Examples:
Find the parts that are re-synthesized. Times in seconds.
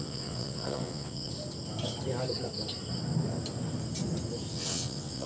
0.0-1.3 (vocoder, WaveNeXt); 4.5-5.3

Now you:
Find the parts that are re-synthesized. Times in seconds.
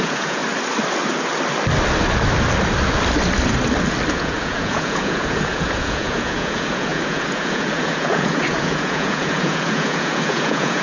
0.0-0.4 (vocoder, Vocos); 4.1-10.8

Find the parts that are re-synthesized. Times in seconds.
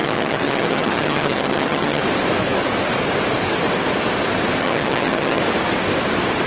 0.0-2.0 (vocoder, HiFi-GAN); 4.6-5.4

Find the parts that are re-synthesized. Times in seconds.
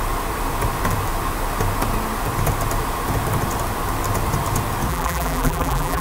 4.9-6.0 (vocoder, BigVGAN v2)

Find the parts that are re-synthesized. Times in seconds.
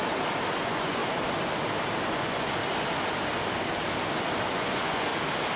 0.6-1.0 (vocoder, Vocos); 2.1-2.6; 4.5-5.1